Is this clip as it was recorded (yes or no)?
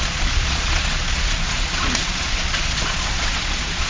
no